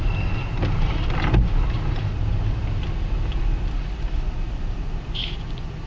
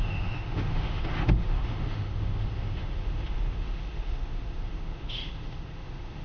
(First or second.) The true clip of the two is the first